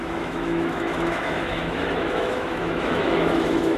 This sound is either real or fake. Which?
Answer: fake